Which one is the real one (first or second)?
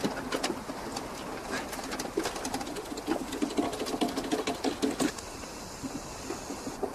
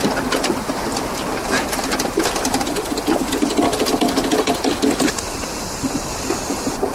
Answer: first